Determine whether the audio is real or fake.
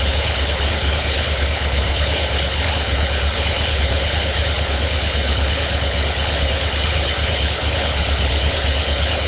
fake